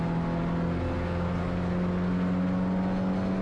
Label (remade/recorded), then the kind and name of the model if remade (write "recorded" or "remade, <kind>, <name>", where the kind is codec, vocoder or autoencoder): recorded